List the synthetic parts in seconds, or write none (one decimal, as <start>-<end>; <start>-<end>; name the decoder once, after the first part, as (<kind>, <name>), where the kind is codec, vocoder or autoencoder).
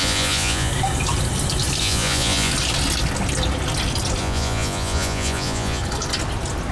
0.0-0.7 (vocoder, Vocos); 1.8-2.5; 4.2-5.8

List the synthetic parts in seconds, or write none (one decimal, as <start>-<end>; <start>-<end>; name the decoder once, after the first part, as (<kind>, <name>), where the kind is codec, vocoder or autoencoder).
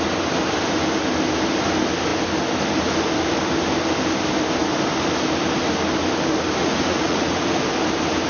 6.6-7.6 (vocoder, Vocos)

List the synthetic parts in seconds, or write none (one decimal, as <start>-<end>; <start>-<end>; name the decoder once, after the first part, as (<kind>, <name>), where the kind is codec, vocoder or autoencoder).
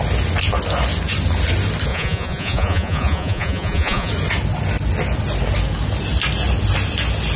1.9-4.1 (vocoder, Vocos)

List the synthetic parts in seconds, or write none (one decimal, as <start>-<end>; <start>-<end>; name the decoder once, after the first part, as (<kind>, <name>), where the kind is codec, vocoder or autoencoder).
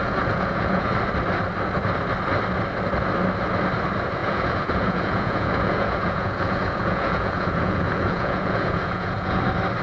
0.0-0.9 (vocoder, Vocos); 4.2-9.4